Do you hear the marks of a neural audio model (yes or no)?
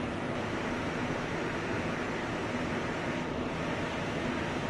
no